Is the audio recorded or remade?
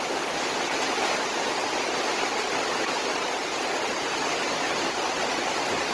recorded